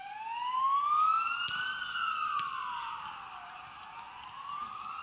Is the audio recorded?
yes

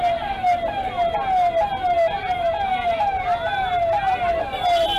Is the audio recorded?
yes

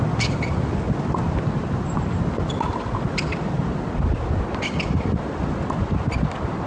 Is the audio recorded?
yes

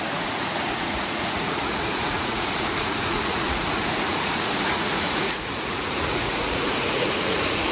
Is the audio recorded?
no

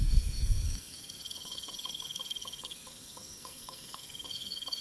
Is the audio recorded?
no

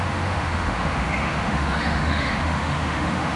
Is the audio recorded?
no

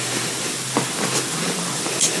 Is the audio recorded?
yes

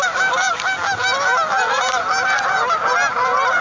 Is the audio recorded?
yes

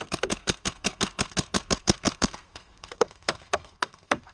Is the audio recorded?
no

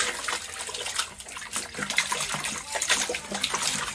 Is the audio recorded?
yes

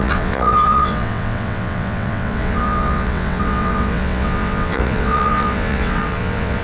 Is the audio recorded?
no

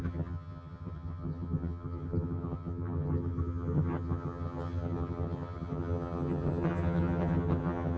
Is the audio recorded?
no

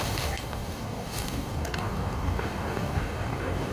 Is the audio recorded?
no